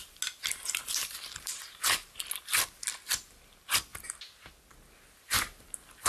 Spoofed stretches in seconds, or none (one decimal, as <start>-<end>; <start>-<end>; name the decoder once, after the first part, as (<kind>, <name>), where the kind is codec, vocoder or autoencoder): 0.8-2.2 (vocoder, BigVGAN v2)